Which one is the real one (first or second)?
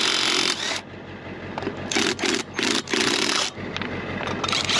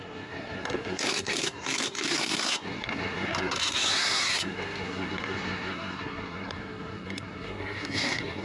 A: first